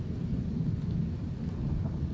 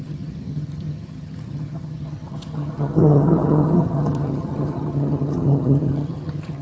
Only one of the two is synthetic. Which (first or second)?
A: second